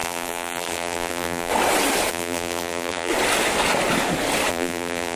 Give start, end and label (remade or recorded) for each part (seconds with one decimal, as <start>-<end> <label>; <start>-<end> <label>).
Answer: 0.0-1.5 remade; 1.5-2.1 recorded; 2.1-3.1 remade; 3.1-4.5 recorded; 4.5-5.2 remade

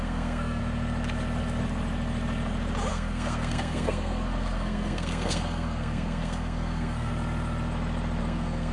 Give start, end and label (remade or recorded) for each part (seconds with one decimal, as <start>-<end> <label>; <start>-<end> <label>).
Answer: 0.0-0.6 remade; 0.6-2.9 recorded; 2.9-7.1 remade; 7.1-8.2 recorded; 8.2-8.7 remade

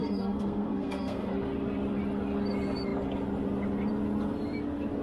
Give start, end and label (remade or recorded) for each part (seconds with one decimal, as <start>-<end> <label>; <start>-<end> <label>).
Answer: 0.0-1.3 remade; 1.3-5.0 recorded